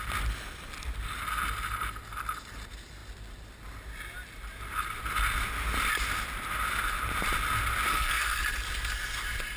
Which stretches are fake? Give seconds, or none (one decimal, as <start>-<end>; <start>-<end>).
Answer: 7.9-8.4